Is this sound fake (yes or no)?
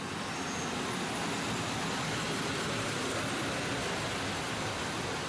no